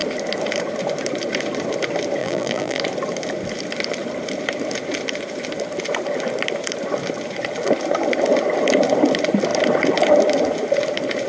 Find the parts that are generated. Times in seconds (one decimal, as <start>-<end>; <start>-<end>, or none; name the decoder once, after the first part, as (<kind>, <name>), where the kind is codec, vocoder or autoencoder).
2.2-2.8 (vocoder, BigVGAN v2)